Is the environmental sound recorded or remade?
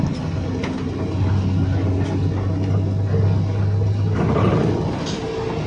recorded